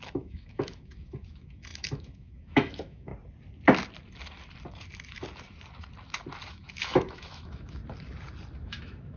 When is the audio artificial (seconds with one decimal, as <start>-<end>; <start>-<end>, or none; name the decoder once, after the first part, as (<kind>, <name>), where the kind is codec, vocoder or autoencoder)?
0.0-3.1 (autoencoder, DAC-VAE); 6.5-7.8; 8.6-9.2